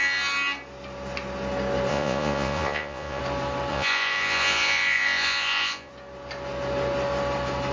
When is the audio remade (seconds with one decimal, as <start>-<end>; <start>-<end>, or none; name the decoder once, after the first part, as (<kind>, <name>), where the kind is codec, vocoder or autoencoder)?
1.9-3.2 (vocoder, Vocos); 3.7-5.9